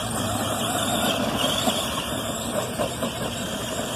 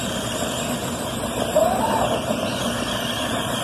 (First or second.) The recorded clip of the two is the second